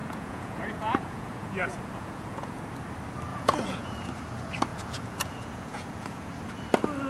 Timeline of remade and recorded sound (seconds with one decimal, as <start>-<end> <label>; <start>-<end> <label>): 0.0-2.6 remade; 2.6-3.3 recorded; 3.3-4.1 remade; 4.1-4.7 recorded; 4.7-6.3 remade; 6.3-7.1 recorded